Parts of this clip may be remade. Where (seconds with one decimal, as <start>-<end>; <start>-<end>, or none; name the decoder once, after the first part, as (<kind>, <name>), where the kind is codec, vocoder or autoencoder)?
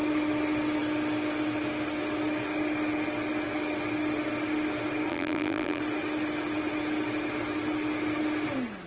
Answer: 5.1-5.8 (vocoder, BigVGAN v2)